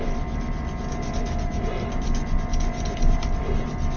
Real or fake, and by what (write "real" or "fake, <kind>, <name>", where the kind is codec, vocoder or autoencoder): real